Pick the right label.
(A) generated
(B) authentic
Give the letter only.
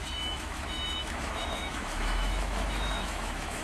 A